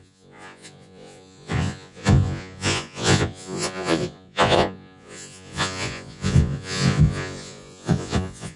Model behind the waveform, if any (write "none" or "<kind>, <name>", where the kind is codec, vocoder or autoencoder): vocoder, Vocos